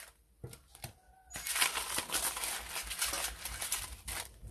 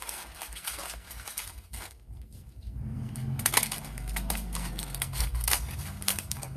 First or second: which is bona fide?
first